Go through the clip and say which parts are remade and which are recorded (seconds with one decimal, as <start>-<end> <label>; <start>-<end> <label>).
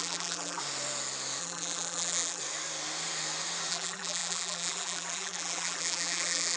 0.0-0.6 remade; 0.6-1.4 recorded; 1.4-2.4 remade; 2.4-3.7 recorded; 3.7-6.6 remade